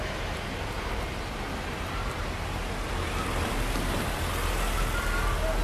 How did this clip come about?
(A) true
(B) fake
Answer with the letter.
A